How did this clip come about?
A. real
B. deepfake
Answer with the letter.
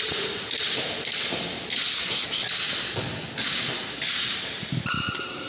A